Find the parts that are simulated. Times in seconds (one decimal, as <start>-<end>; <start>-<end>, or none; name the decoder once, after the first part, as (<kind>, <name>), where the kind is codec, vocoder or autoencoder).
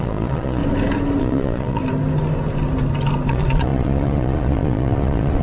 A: 0.0-0.6 (vocoder, Vocos); 1.2-1.8; 3.3-5.4